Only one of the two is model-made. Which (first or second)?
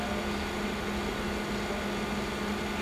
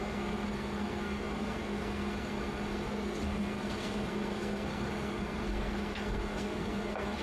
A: second